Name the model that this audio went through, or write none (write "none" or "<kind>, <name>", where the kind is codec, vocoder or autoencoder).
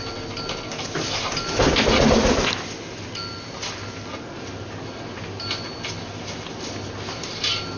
none